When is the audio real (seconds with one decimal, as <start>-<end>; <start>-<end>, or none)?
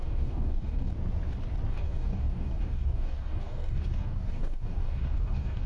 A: 0.9-1.7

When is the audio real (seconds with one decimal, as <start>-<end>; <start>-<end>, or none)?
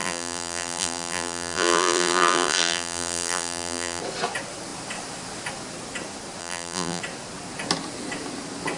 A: 4.0-6.4; 7.0-8.8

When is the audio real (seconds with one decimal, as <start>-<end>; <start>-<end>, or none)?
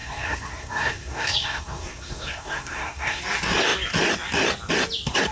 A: 3.2-5.3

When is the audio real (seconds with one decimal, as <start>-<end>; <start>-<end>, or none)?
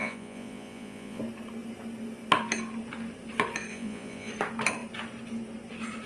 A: 1.2-3.7; 4.3-6.1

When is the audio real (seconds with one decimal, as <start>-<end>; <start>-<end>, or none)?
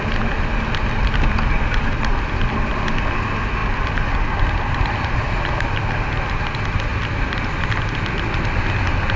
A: 0.0-9.2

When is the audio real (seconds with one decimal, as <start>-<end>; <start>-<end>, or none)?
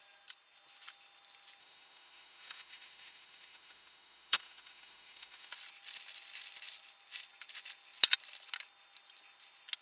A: 0.0-1.6; 5.5-9.8